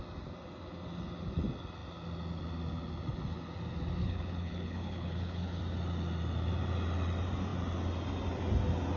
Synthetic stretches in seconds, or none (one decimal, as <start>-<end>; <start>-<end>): 4.0-5.6